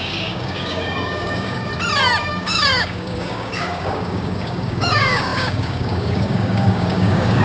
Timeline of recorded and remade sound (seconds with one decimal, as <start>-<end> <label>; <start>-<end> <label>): 0.0-1.7 remade; 1.7-2.2 recorded; 2.2-7.4 remade